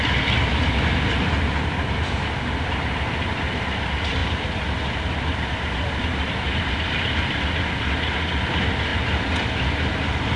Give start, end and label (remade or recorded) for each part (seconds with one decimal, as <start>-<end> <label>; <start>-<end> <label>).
0.0-10.4 recorded